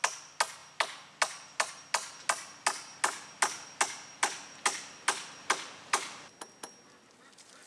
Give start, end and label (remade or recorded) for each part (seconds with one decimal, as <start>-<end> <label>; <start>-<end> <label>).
0.0-7.7 recorded